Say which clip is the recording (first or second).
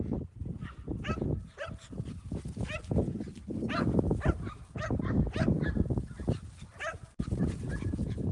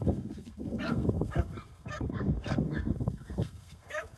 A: first